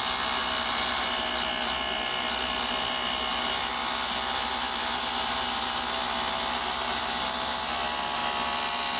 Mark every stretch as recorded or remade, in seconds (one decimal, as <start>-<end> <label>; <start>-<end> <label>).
0.0-9.0 recorded